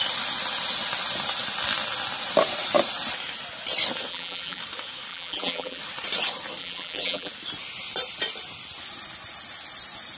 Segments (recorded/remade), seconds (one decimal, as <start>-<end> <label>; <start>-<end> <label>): 0.0-4.1 recorded; 4.1-4.6 remade; 4.6-5.1 recorded; 5.1-5.8 remade; 5.8-6.6 recorded; 6.6-7.3 remade; 7.3-10.2 recorded